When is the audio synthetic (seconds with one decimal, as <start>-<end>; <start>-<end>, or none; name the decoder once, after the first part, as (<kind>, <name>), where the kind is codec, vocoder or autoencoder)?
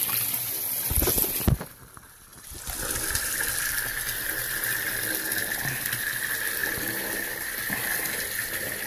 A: none